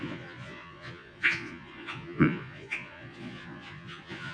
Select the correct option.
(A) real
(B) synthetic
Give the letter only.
B